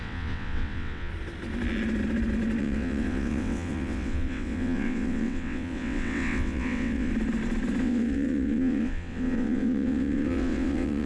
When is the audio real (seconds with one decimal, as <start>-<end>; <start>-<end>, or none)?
1.1-2.6; 7.1-7.8